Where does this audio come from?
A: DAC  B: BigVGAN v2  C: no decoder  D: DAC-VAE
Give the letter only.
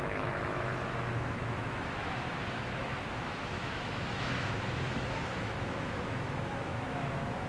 D